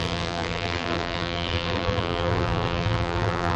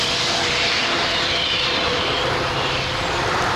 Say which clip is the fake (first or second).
first